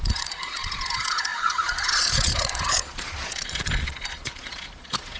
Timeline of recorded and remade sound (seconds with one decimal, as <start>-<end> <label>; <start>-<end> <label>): 0.0-5.2 remade